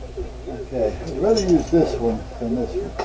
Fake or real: real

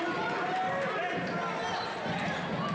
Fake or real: real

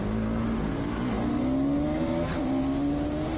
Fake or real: real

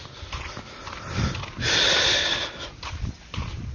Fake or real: real